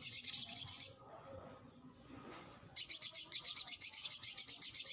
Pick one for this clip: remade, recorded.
remade